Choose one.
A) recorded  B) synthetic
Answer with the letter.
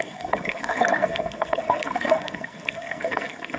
B